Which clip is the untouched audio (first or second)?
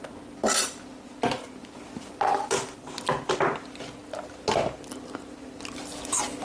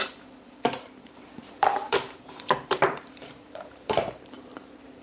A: first